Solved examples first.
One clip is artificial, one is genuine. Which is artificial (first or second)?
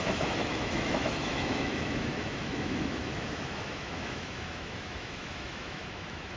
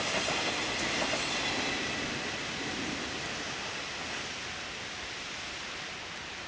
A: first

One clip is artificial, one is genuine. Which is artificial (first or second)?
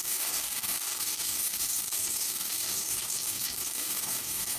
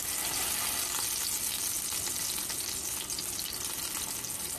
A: first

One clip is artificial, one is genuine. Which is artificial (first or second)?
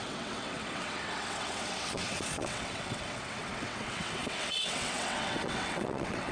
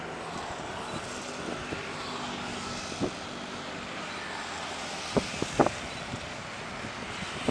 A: first